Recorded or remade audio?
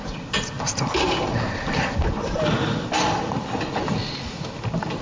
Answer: recorded